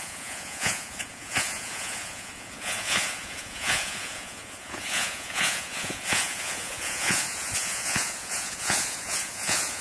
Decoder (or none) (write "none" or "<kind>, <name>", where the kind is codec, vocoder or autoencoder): vocoder, Vocos